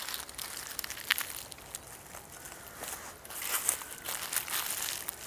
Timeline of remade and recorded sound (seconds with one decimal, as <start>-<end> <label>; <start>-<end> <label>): 0.0-5.3 recorded

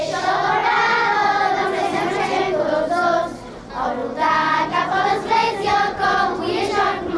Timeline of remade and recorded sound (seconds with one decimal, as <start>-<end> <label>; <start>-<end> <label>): 0.0-7.2 recorded

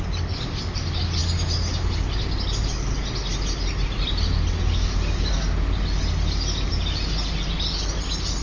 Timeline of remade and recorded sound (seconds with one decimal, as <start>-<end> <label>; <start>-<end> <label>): 0.0-8.4 recorded

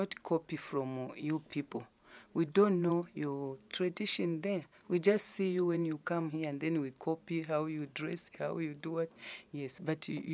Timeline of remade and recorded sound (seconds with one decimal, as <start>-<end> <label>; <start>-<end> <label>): 0.0-1.5 recorded; 1.5-2.9 remade; 2.9-3.7 recorded; 3.7-6.3 remade; 6.3-10.3 recorded

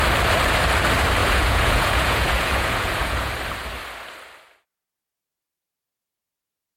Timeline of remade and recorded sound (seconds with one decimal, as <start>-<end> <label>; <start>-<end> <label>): 0.0-1.2 recorded; 1.2-3.3 remade; 3.3-6.8 recorded

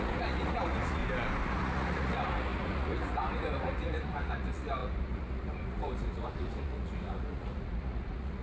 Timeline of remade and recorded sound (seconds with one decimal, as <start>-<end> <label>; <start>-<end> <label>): 0.0-1.0 remade; 1.0-1.5 recorded; 1.5-8.4 remade